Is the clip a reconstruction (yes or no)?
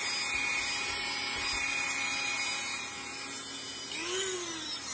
no